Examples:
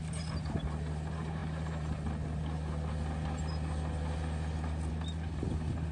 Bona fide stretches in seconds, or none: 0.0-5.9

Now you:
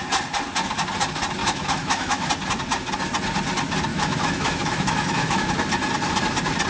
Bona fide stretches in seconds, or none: 0.0-1.4; 2.3-3.9; 5.5-6.7

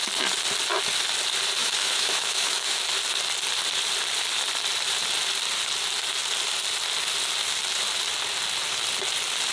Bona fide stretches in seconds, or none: 0.0-1.6; 2.8-9.5